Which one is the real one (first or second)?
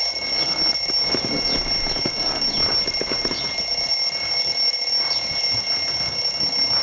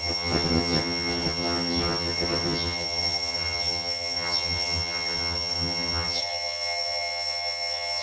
first